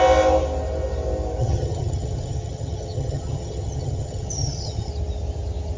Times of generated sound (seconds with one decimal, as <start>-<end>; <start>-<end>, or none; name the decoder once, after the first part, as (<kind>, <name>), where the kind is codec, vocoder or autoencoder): 1.4-4.9 (vocoder, HiFi-GAN)